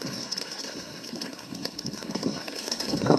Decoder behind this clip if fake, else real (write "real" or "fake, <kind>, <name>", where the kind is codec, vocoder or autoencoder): fake, codec, SNAC